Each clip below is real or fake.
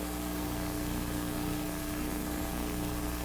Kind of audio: fake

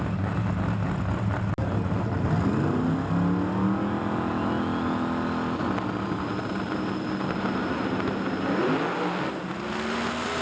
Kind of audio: real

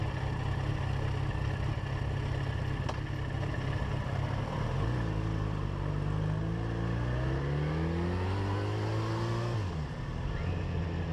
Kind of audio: real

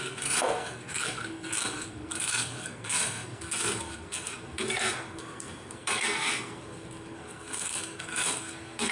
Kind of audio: fake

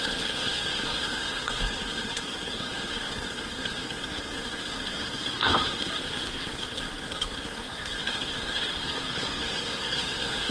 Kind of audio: fake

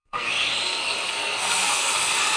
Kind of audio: fake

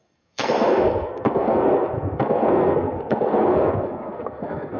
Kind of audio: fake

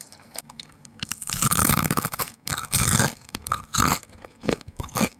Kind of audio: fake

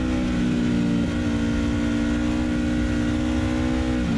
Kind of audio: real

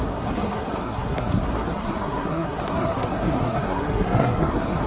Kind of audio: fake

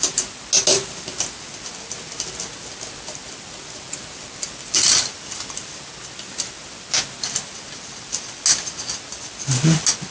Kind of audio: real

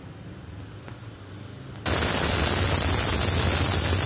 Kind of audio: real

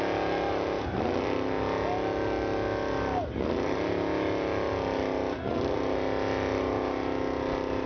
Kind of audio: real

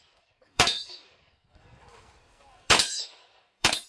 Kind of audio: fake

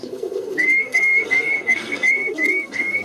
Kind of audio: fake